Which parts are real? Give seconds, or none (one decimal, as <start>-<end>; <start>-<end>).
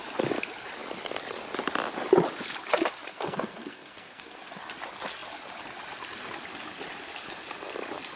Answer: 0.0-3.1; 4.6-8.2